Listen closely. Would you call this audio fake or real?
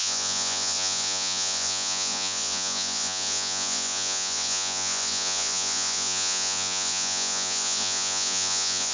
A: fake